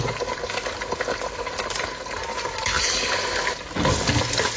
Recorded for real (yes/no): yes